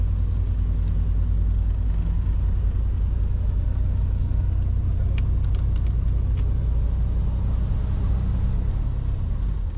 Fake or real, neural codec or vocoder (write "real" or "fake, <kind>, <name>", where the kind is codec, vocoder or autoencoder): real